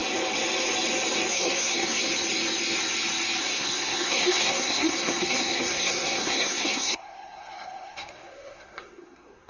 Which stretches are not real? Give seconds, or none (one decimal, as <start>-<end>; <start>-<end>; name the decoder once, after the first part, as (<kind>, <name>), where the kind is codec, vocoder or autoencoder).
1.3-2.0 (codec, SNAC); 3.4-9.5